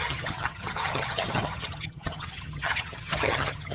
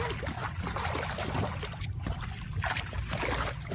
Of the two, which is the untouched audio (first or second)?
second